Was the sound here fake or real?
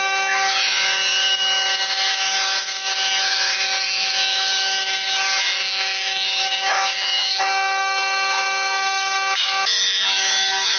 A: fake